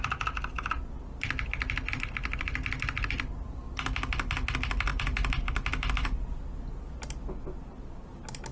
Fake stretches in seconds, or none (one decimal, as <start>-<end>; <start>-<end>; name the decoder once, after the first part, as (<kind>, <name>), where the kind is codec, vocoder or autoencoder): none